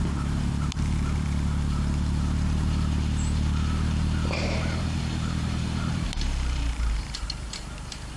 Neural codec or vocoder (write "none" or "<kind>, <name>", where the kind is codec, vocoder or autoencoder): vocoder, BigVGAN v2